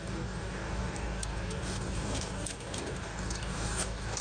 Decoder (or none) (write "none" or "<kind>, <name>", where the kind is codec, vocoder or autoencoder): codec, DAC